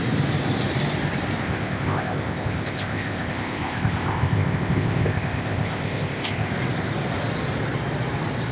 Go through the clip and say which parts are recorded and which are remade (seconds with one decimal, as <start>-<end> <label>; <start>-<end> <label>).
0.0-1.4 recorded; 1.4-6.5 remade; 6.5-8.5 recorded